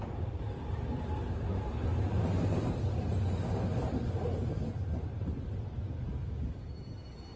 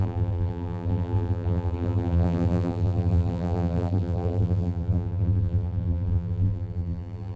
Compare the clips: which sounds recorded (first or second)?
first